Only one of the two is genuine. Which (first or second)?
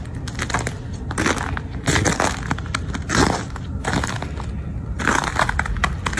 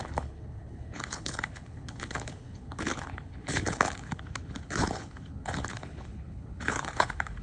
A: first